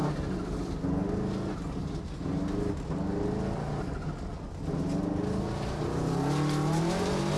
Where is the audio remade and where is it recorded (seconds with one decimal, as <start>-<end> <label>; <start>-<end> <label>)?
0.0-7.4 recorded